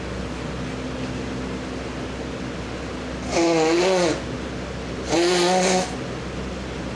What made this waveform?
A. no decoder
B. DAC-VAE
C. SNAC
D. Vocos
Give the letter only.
A